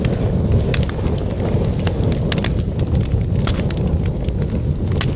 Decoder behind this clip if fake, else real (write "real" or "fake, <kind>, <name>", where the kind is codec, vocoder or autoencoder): real